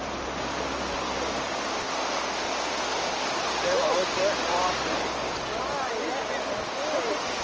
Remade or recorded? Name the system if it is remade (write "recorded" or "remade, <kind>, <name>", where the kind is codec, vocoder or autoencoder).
recorded